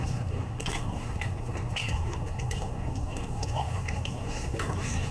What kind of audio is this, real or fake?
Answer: fake